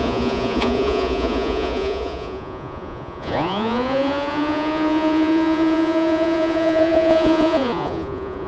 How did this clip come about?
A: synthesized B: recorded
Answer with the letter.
A